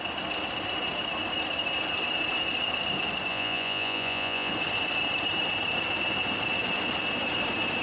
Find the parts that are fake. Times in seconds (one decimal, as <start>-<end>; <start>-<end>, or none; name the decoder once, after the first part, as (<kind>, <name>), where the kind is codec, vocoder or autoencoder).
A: 3.3-4.5 (vocoder, Vocos)